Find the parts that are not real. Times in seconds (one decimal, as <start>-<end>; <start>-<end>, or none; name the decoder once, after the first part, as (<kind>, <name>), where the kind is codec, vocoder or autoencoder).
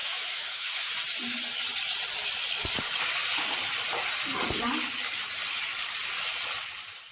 0.0-0.9 (autoencoder, DAC-VAE)